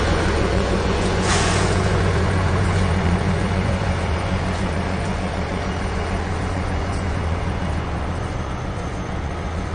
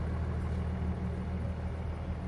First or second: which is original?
second